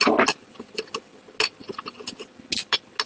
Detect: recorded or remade recorded